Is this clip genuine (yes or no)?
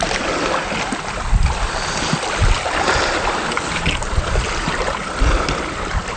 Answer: yes